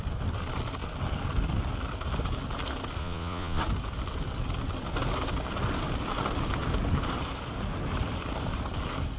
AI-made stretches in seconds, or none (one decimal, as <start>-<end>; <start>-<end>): 3.0-3.6

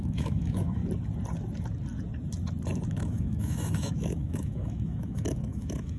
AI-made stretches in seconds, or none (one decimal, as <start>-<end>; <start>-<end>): 0.0-0.8; 2.9-6.0

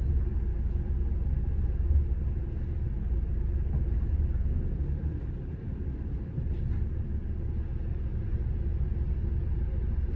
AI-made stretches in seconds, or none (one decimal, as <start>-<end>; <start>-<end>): none

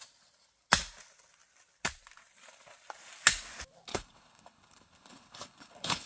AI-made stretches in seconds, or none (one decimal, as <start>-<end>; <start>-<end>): 3.9-6.1

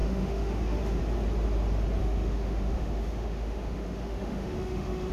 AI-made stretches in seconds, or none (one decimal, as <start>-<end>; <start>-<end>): 0.0-1.0; 2.0-5.1